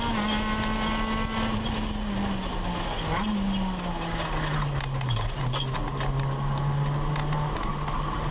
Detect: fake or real real